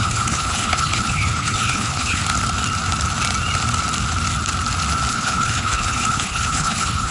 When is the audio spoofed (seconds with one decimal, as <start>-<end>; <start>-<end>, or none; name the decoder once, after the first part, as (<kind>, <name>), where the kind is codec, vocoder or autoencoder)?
0.0-2.2 (codec, HILCodec); 5.1-7.1